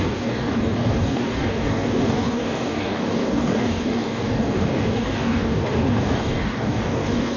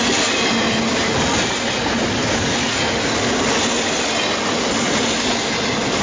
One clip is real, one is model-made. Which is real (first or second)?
second